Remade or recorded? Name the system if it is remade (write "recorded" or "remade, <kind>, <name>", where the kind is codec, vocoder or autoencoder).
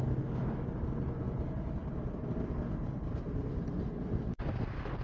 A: recorded